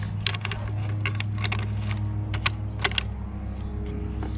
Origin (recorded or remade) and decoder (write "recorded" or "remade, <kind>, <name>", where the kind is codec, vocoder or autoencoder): recorded